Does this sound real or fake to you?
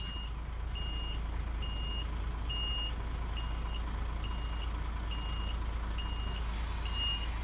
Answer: real